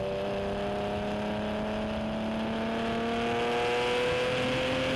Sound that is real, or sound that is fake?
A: real